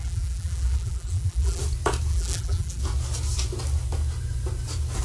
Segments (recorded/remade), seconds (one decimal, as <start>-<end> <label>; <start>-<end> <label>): 0.0-1.6 remade; 1.6-2.1 recorded; 2.1-2.8 remade; 2.8-5.0 recorded